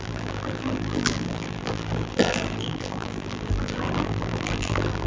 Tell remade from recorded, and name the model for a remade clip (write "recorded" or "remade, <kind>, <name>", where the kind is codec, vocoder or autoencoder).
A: remade, vocoder, BigVGAN v2